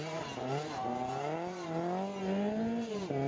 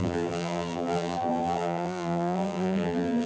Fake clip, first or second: second